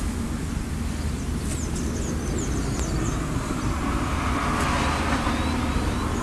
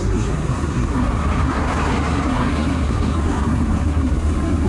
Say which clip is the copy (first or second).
second